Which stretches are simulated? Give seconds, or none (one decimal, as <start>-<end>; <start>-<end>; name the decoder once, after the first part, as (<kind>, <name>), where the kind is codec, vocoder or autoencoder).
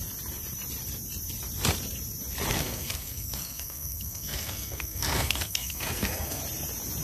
2.5-6.4 (codec, SNAC)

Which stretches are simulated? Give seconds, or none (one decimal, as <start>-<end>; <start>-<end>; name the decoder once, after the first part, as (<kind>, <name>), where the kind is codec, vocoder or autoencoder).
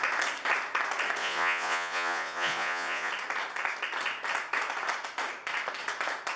1.2-3.1 (vocoder, Vocos)